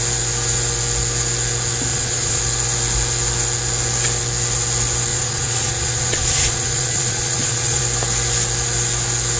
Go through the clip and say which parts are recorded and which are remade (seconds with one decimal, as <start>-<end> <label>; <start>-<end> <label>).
0.0-1.9 recorded; 1.9-2.4 remade; 2.4-5.1 recorded; 5.1-7.8 remade; 7.8-9.4 recorded